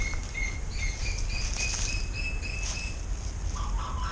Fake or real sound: real